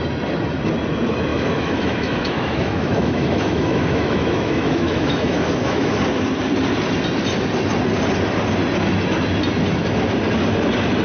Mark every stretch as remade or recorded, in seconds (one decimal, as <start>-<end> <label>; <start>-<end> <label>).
0.0-1.3 recorded; 1.3-5.9 remade; 5.9-11.0 recorded